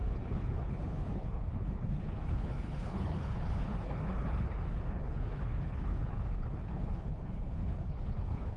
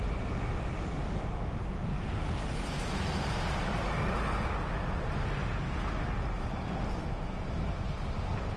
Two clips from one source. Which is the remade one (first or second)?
first